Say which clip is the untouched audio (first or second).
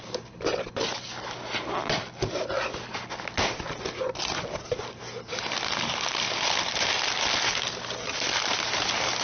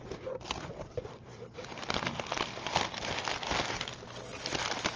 first